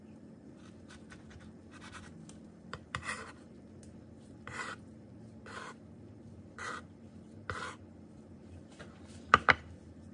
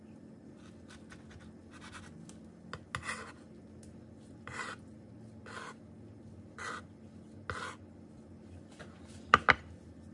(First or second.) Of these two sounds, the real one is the second